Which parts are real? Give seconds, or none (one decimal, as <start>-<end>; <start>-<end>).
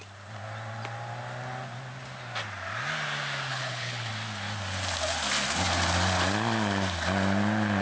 0.0-3.5; 4.1-7.8